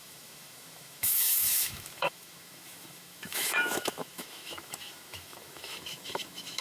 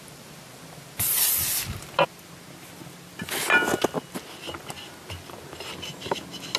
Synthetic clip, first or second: first